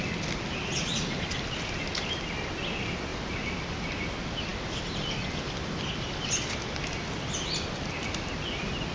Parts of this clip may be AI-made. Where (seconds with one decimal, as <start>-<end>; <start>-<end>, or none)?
none